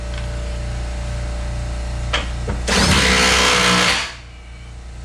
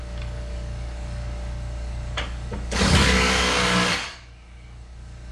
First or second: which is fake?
second